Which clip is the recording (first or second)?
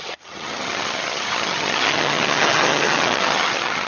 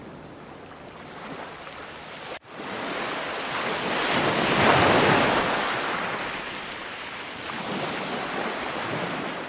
second